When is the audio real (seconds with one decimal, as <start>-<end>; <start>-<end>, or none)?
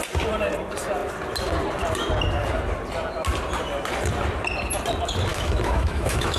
0.0-5.3